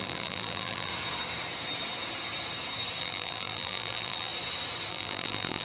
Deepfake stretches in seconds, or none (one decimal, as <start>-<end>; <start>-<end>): 0.0-0.9; 3.0-4.3; 4.9-5.6